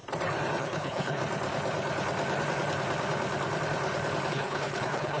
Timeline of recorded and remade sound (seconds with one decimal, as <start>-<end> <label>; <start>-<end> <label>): 0.0-0.6 recorded; 0.6-1.2 remade; 1.2-4.3 recorded; 4.3-5.2 remade